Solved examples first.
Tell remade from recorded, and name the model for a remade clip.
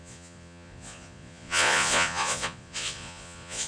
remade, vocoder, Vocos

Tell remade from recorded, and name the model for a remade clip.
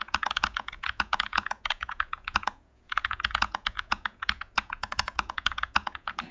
remade, vocoder, Vocos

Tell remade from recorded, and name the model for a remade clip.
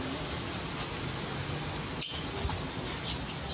recorded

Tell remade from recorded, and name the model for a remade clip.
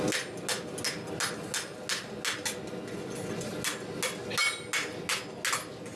recorded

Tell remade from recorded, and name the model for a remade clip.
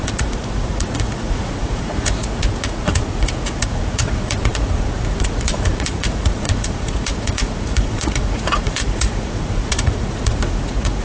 remade, vocoder, Vocos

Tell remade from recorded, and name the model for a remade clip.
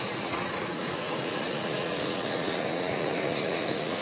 remade, vocoder, Vocos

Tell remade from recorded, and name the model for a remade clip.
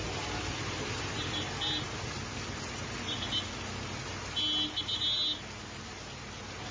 recorded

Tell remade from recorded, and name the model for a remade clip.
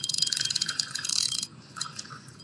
remade, vocoder, Vocos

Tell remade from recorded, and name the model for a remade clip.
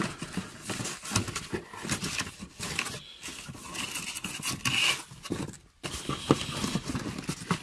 recorded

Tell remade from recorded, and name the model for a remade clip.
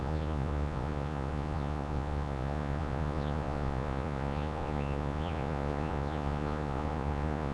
remade, vocoder, Vocos